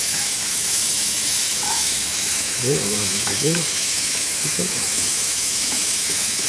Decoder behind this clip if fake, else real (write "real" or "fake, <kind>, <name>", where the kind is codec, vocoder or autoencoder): fake, autoencoder, DAC-VAE